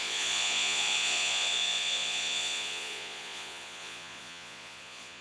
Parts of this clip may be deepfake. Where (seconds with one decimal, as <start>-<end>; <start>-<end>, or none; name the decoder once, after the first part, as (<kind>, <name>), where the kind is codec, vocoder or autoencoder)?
0.0-5.2 (vocoder, Vocos)